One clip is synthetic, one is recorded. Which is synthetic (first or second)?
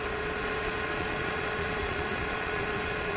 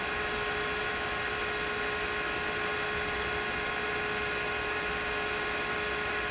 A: first